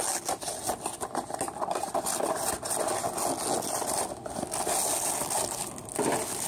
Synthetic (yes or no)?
no